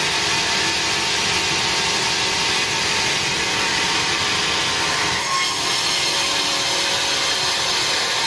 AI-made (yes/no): no